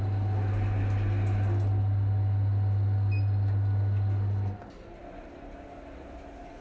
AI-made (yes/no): no